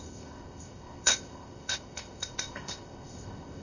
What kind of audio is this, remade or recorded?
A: remade